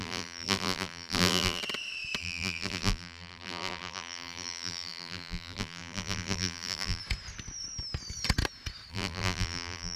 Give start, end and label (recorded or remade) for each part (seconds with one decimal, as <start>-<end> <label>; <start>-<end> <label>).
0.0-1.6 remade; 1.6-2.2 recorded; 2.2-7.0 remade; 7.0-8.9 recorded; 8.9-10.0 remade